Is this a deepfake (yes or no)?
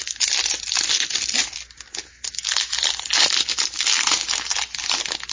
no